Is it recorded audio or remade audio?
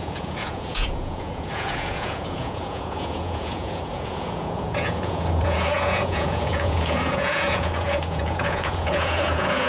remade